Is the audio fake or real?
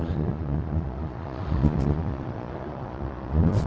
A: fake